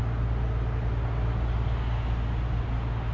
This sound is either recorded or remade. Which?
recorded